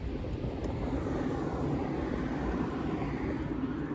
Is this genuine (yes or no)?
yes